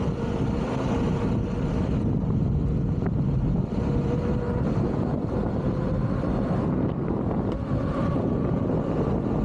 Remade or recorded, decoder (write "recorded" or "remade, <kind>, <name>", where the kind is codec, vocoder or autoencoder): recorded